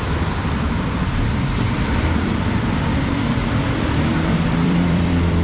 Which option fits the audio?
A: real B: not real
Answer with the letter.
B